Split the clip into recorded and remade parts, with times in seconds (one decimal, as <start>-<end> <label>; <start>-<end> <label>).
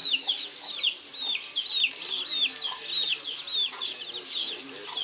0.0-0.7 remade; 0.7-5.0 recorded